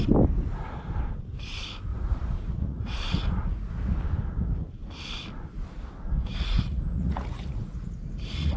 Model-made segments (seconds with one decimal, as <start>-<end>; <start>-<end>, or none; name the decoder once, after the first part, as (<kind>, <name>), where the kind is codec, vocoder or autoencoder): 1.9-3.9 (vocoder, Vocos); 6.2-8.6